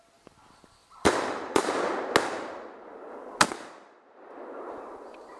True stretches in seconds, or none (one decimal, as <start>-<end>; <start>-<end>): 0.0-0.8; 1.7-5.4